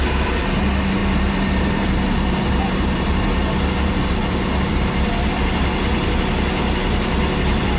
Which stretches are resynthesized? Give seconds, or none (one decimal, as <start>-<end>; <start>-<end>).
0.0-0.6; 1.0-5.3